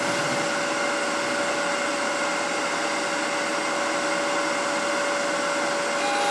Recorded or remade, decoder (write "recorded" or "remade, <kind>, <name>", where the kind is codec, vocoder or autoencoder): recorded